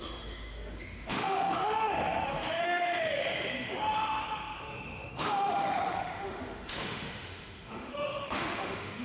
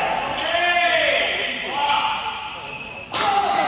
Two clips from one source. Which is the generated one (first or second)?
first